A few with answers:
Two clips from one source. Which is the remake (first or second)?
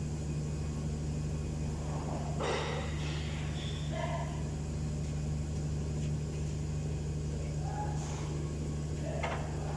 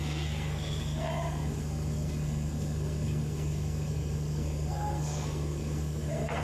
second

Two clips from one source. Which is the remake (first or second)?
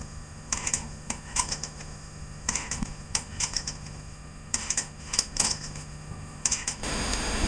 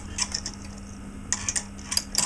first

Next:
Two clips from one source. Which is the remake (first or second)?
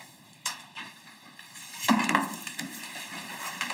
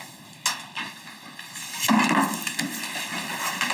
first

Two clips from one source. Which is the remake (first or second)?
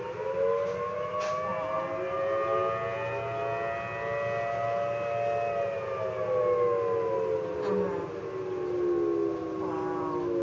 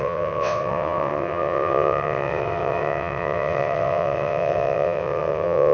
second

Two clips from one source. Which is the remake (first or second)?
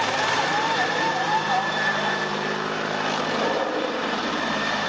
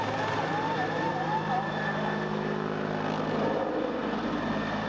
first